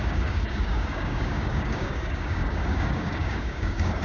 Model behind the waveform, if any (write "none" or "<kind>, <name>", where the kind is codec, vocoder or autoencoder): codec, DAC